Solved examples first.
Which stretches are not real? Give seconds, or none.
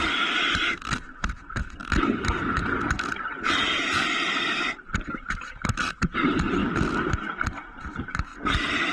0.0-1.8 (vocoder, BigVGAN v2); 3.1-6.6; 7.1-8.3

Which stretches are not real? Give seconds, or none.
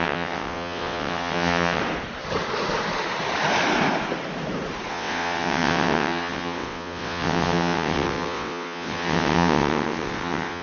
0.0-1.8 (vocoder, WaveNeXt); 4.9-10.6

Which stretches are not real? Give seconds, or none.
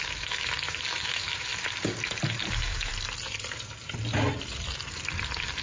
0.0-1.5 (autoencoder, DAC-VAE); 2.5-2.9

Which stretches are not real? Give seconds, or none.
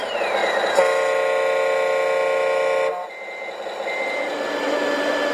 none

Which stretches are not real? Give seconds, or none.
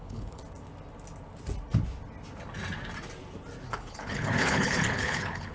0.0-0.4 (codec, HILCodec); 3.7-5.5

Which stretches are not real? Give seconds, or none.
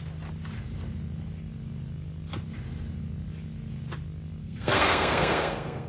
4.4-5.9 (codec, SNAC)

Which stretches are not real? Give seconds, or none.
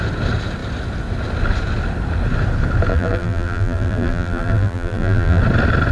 2.9-5.4 (vocoder, BigVGAN v2)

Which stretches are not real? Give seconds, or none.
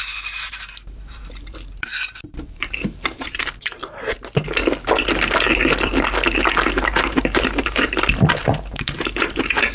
0.0-3.8 (vocoder, BigVGAN v2); 6.7-9.7